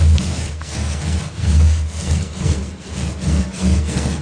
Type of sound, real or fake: fake